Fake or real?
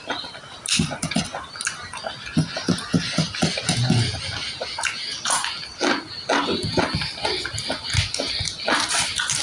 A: real